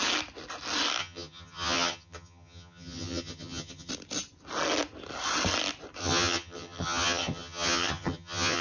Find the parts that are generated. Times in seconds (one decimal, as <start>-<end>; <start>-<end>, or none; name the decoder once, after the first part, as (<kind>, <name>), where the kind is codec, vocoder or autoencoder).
1.0-3.9 (vocoder, HiFi-GAN); 6.0-8.6